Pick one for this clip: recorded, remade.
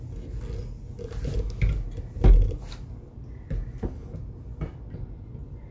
recorded